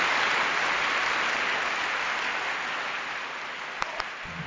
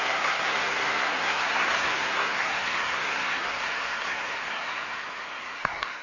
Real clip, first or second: first